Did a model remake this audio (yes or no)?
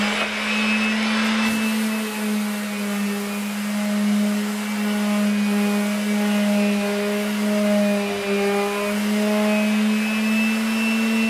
no